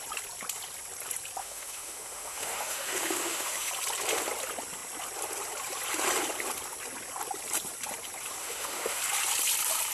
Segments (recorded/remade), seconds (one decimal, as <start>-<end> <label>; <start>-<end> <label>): 0.0-1.4 recorded; 1.4-3.7 remade; 3.7-8.4 recorded; 8.4-9.0 remade; 9.0-9.9 recorded